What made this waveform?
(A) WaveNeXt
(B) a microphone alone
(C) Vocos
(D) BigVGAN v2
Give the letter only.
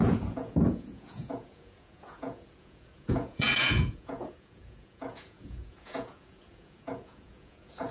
C